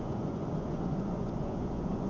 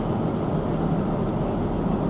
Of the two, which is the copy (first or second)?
first